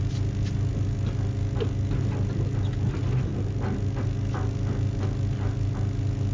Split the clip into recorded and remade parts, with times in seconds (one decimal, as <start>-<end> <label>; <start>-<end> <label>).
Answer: 0.0-6.3 recorded